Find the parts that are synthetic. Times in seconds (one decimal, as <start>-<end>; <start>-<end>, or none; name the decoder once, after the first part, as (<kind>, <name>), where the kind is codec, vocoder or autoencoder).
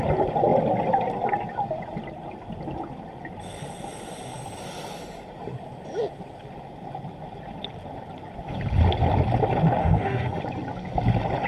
9.8-10.4 (autoencoder, DAC-VAE)